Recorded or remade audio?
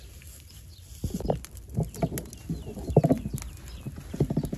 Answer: recorded